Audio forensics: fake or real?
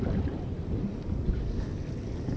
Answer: real